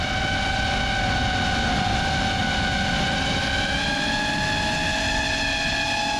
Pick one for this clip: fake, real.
real